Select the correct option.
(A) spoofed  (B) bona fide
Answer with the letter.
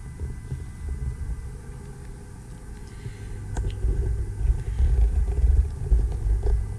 B